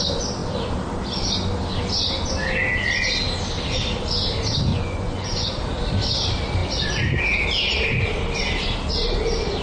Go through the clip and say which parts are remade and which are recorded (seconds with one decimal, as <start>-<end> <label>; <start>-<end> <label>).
0.0-4.7 recorded; 4.7-5.6 remade; 5.6-9.6 recorded